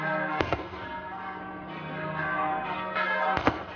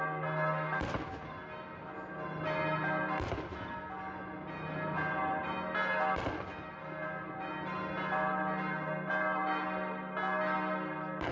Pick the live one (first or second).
second